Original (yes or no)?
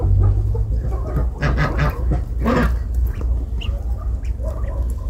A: yes